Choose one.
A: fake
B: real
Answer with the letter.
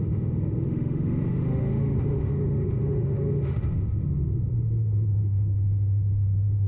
A